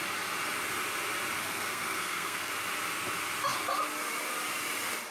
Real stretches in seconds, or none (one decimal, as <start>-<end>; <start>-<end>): 0.0-1.4; 2.5-5.1